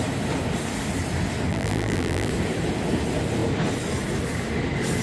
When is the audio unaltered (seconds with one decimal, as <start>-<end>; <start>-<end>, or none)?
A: 0.0-1.5; 2.3-5.0